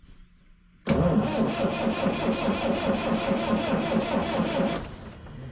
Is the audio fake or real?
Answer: real